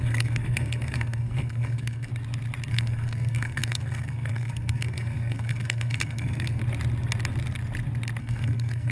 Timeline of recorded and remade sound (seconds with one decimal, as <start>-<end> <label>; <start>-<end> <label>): 0.0-2.1 remade; 2.1-2.7 recorded; 2.7-6.6 remade; 6.6-8.2 recorded; 8.2-8.9 remade